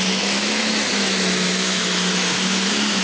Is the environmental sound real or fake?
fake